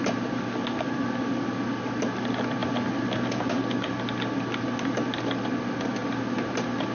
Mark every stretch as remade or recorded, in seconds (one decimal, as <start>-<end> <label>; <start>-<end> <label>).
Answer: 0.0-6.9 recorded